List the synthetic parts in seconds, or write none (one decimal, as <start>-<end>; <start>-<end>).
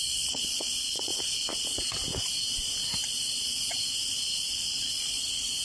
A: 0.0-1.1; 4.5-5.6